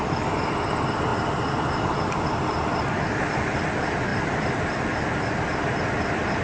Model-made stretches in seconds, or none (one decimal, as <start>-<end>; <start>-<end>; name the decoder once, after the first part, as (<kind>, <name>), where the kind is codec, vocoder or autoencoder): none